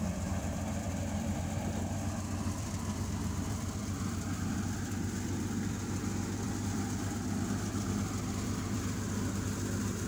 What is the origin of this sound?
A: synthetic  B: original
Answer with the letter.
A